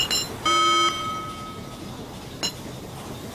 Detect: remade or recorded recorded